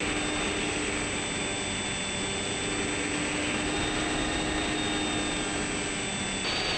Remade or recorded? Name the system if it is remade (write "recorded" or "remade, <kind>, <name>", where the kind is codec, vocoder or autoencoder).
recorded